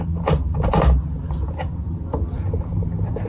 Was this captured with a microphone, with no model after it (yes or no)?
yes